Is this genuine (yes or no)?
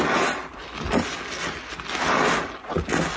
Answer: yes